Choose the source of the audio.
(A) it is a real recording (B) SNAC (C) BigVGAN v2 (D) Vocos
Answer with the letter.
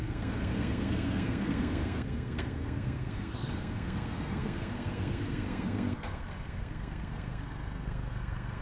B